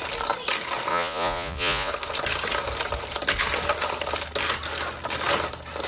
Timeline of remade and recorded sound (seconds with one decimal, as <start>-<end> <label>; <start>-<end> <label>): 0.0-0.9 recorded; 0.9-1.9 remade; 1.9-5.9 recorded